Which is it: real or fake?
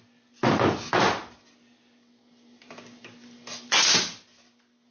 real